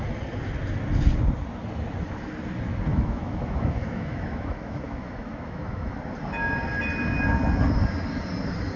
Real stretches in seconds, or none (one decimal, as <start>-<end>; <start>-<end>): 0.0-2.9; 6.0-8.8